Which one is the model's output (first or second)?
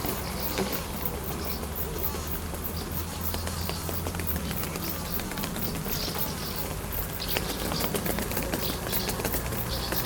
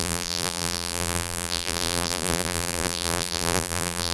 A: second